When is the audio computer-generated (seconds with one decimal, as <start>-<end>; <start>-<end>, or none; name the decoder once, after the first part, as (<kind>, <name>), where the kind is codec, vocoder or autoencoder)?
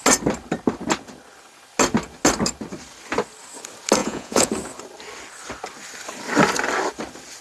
4.0-4.5 (vocoder, Vocos)